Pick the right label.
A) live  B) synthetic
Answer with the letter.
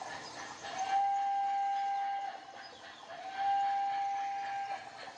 A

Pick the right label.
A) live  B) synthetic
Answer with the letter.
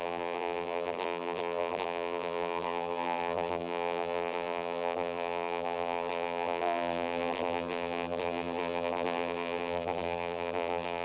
B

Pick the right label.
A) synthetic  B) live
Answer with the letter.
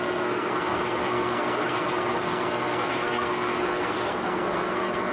A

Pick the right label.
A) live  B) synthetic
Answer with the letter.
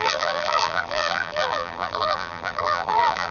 B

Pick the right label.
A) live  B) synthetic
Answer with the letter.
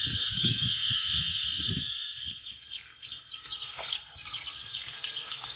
B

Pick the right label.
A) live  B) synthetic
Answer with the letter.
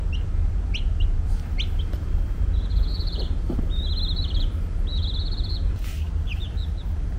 A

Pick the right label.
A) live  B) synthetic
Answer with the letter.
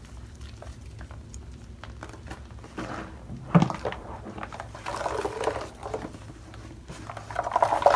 A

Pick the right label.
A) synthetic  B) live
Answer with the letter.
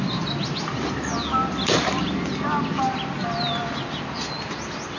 B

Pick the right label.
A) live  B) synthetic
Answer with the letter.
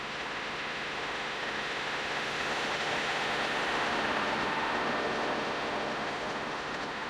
B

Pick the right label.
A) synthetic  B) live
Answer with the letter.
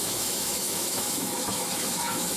A